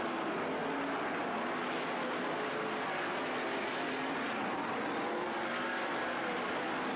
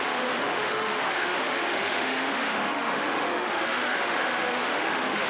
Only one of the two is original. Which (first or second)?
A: first